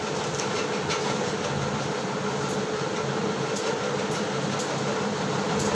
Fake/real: real